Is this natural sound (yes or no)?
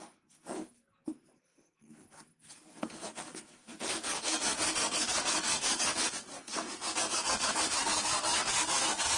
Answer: no